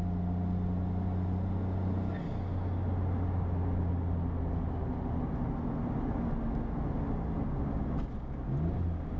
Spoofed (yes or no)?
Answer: no